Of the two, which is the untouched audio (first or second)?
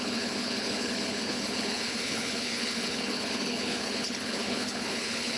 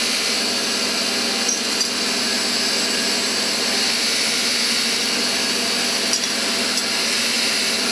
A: second